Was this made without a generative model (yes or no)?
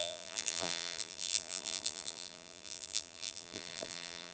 no